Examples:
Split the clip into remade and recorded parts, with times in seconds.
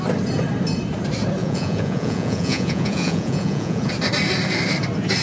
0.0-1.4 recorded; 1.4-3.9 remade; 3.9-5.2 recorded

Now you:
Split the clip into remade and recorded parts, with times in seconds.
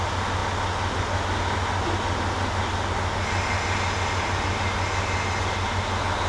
0.0-6.3 recorded